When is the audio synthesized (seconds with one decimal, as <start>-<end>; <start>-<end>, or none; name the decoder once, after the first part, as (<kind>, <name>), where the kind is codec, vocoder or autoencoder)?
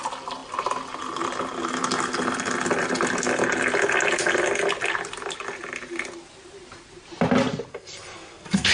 7.7-8.7 (codec, SNAC)